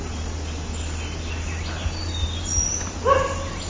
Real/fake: real